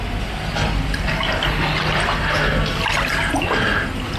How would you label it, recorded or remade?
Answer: recorded